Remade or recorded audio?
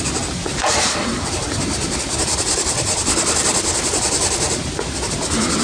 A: recorded